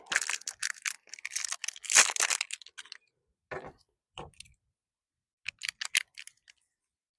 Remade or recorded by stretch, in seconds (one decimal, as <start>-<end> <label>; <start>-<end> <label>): 0.0-7.2 recorded